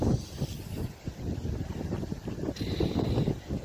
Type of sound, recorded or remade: recorded